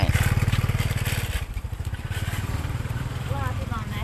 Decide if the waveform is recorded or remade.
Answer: remade